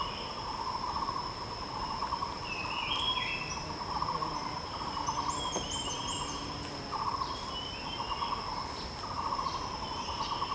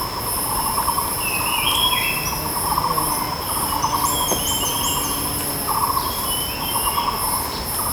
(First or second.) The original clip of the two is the second